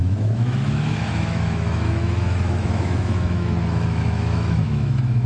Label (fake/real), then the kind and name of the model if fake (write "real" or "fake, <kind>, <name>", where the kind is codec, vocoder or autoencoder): fake, autoencoder, DAC-VAE